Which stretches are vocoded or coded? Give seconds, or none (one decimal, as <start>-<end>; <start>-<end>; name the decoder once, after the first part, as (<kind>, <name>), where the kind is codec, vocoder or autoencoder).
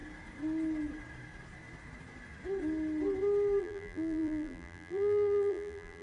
3.6-6.0 (vocoder, BigVGAN v2)